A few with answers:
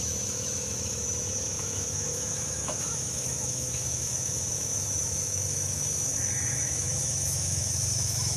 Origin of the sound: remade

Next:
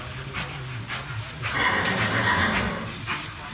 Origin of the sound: recorded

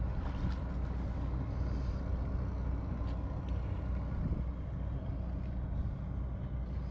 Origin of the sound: recorded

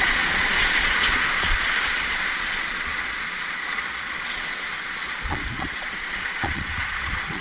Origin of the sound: remade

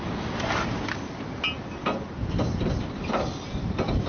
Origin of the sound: recorded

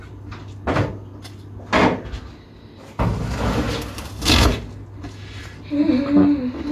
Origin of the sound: recorded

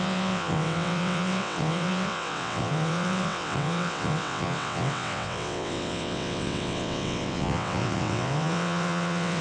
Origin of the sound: remade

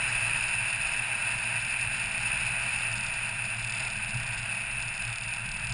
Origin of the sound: recorded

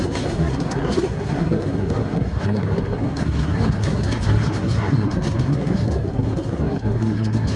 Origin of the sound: remade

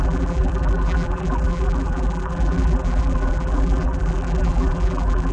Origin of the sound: remade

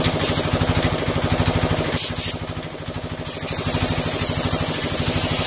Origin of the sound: recorded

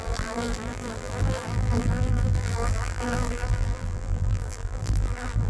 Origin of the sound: remade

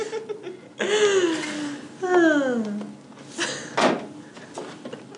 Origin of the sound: recorded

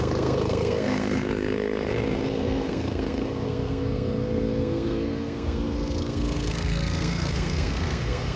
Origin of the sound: remade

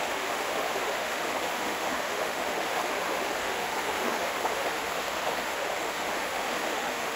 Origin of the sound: remade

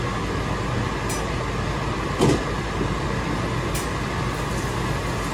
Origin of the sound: recorded